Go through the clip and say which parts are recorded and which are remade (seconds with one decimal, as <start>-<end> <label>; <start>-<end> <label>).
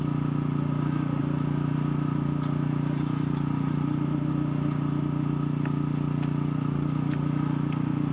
0.0-1.2 recorded; 1.2-4.3 remade; 4.3-8.1 recorded